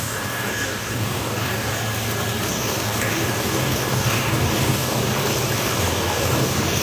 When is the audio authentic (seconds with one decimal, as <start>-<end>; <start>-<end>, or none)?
1.7-2.5; 5.0-5.6